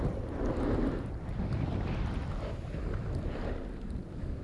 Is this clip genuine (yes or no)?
yes